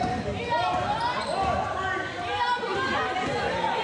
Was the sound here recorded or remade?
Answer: recorded